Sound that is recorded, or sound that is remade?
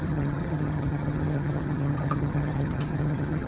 remade